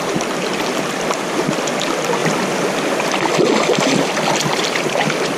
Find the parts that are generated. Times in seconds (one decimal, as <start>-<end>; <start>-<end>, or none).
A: none